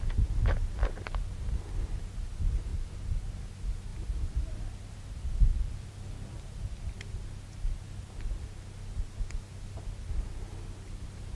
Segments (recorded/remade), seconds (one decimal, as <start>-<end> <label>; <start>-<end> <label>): 0.0-11.4 recorded